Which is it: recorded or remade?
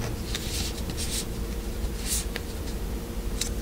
recorded